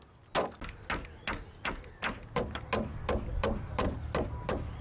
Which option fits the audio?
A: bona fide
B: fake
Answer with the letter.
A